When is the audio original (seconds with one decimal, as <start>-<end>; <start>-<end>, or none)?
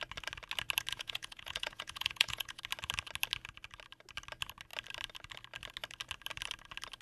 0.0-0.9; 2.6-7.0